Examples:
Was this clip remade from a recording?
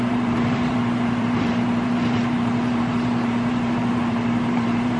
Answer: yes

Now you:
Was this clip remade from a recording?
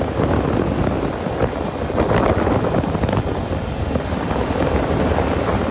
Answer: no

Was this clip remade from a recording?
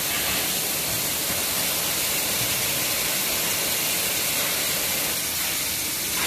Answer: no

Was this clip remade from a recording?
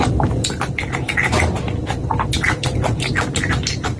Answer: no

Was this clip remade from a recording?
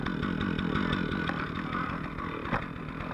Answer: no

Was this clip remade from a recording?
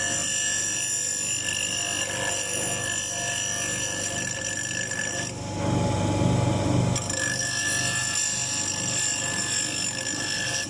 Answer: no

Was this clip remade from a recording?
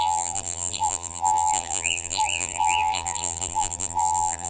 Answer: yes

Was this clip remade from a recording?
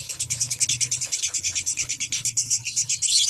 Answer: yes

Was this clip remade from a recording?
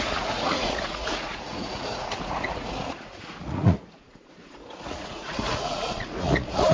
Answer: yes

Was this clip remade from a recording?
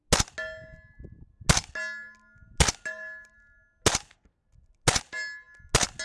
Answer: no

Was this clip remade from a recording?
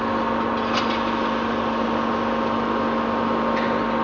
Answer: no